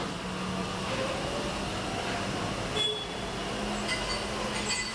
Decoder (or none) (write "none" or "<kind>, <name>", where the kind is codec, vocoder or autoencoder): none